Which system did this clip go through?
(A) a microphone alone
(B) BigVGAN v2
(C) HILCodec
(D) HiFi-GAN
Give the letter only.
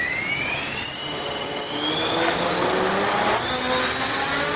A